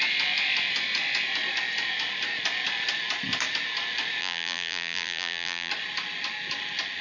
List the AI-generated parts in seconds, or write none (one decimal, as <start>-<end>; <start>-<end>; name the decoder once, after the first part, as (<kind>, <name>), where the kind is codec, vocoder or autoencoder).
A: 4.2-5.7 (vocoder, BigVGAN v2)